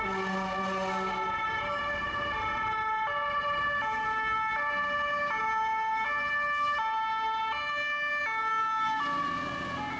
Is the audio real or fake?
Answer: real